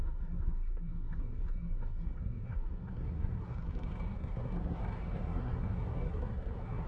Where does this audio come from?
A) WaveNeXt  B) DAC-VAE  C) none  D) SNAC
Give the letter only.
D